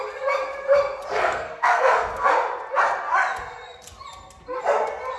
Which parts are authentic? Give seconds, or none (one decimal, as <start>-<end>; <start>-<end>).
0.0-1.1; 2.3-5.2